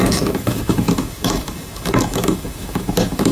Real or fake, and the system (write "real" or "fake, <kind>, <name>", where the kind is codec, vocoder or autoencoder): fake, autoencoder, DAC-VAE